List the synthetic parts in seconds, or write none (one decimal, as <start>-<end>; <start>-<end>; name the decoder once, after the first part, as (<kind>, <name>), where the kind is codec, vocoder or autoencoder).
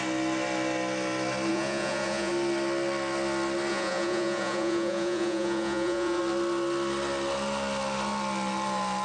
1.5-2.3 (vocoder, Vocos); 3.7-6.2